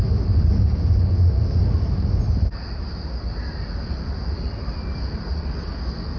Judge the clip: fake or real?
real